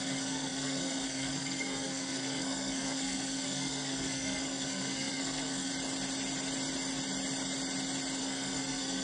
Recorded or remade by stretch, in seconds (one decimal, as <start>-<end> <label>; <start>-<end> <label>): 0.0-5.7 remade; 5.7-8.2 recorded; 8.2-9.0 remade